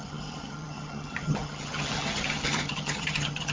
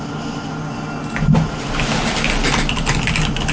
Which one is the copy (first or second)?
first